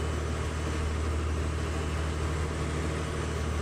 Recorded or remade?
recorded